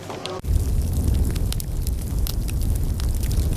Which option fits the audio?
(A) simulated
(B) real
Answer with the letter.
B